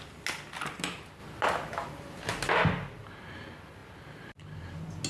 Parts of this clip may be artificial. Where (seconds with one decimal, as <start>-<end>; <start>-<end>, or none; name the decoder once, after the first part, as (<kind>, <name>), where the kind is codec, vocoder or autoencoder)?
none